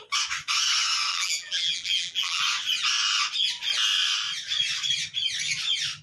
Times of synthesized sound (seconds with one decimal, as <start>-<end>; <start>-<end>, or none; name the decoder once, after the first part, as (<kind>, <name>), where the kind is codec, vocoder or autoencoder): 1.1-2.4 (vocoder, BigVGAN v2)